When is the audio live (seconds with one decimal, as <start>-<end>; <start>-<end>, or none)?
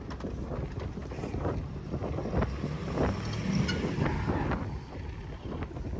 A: 0.0-6.0